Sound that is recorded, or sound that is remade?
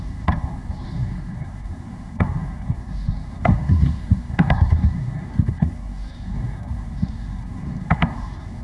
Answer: remade